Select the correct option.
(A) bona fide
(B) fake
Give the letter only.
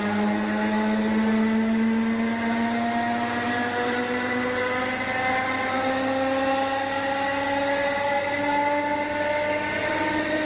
A